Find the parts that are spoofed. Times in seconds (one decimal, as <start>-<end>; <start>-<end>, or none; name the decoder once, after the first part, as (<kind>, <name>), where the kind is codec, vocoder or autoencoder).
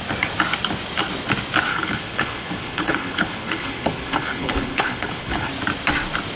1.7-5.5 (codec, HILCodec)